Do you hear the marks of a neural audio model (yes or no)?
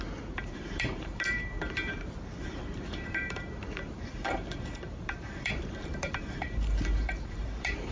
yes